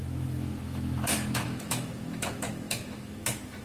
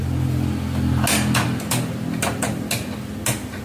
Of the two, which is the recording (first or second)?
second